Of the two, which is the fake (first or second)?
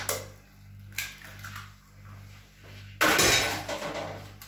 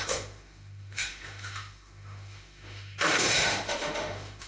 second